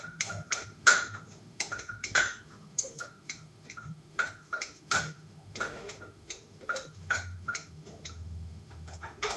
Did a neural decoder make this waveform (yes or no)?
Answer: yes